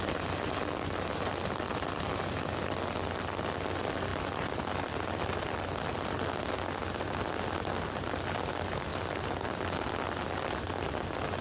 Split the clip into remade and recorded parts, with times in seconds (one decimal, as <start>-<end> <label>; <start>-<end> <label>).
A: 0.0-11.4 recorded